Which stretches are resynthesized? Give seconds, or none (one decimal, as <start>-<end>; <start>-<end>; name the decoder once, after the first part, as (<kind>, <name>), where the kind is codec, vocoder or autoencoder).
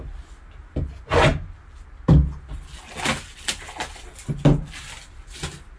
none